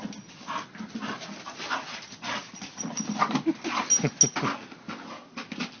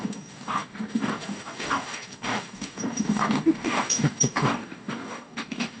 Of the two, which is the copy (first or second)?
second